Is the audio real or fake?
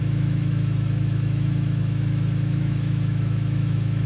fake